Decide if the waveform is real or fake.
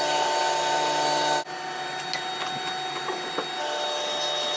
real